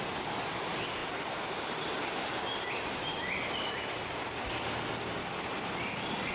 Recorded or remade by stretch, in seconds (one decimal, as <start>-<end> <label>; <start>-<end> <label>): 0.0-6.3 recorded